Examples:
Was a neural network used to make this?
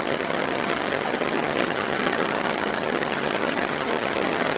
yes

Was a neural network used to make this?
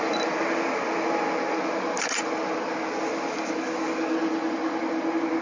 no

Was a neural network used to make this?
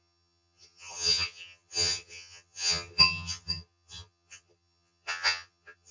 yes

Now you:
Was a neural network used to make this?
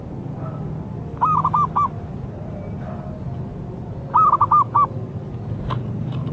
no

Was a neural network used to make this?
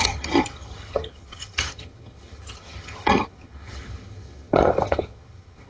yes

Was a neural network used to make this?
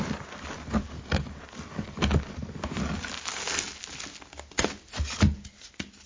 no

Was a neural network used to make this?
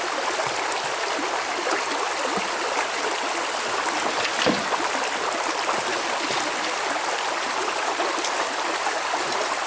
no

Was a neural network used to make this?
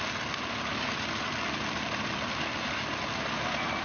no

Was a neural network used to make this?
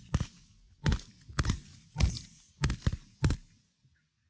no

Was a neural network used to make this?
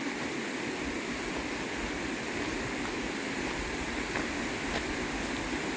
no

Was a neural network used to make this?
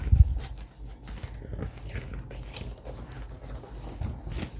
no